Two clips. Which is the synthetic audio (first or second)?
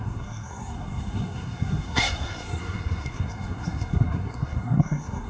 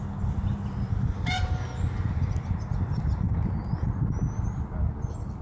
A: first